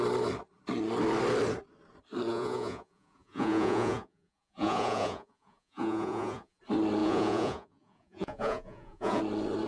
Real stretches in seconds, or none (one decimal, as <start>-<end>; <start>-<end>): 0.0-2.3; 6.6-7.0; 9.2-9.7